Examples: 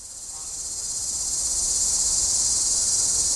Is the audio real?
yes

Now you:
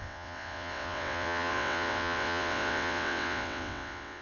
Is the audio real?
no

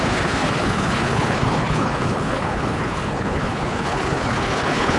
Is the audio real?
no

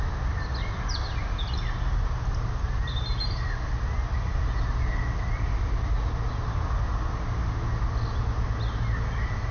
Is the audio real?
yes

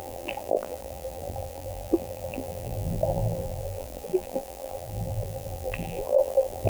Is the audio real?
no